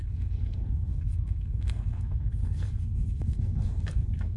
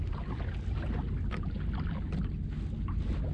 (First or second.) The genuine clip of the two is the second